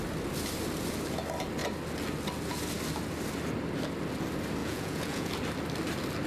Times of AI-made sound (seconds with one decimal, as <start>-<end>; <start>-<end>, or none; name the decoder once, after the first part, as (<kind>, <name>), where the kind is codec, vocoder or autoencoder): 4.6-5.3 (vocoder, Vocos)